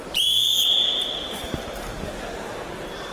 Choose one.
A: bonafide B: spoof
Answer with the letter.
B